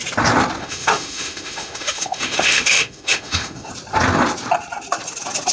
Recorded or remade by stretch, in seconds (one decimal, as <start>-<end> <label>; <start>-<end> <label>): 0.0-0.6 recorded; 0.6-3.7 remade; 3.7-5.5 recorded